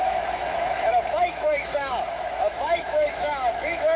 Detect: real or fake fake